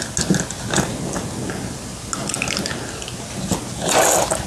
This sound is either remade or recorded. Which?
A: recorded